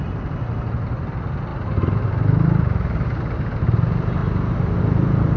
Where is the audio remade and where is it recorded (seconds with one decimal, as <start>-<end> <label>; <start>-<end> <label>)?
0.0-1.5 recorded; 1.5-2.3 remade; 2.3-5.4 recorded